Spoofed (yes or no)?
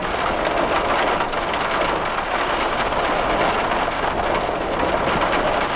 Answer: no